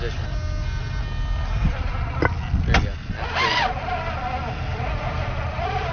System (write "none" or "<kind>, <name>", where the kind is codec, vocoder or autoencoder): none